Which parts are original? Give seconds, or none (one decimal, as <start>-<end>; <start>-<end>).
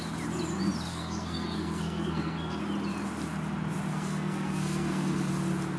0.0-0.9; 2.6-3.9; 5.3-5.8